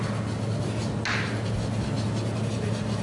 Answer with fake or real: real